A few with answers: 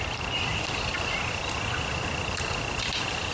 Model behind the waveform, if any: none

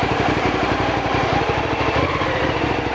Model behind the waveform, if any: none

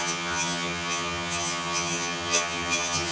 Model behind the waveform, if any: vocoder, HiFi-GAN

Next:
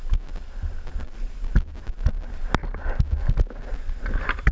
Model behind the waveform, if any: none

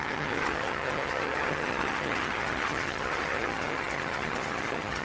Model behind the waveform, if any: vocoder, HiFi-GAN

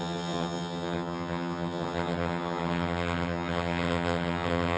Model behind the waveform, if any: vocoder, HiFi-GAN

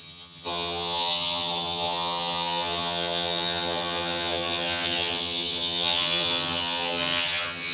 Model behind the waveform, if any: vocoder, HiFi-GAN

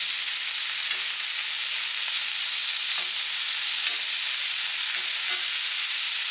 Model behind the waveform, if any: none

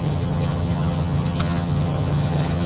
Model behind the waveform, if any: vocoder, HiFi-GAN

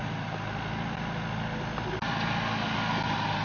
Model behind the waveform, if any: none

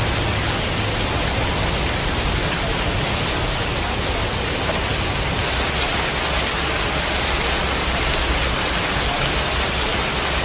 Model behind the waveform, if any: none